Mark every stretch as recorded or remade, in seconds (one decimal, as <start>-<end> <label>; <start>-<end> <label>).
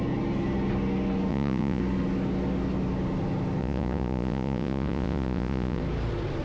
0.0-1.3 recorded; 1.3-1.8 remade; 1.8-3.6 recorded; 3.6-5.8 remade; 5.8-6.4 recorded